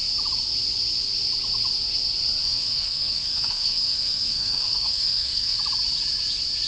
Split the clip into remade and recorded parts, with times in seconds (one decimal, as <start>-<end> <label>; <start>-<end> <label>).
0.0-2.4 recorded; 2.4-5.6 remade; 5.6-6.7 recorded